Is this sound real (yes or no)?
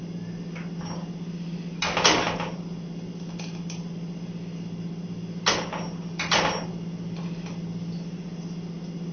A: yes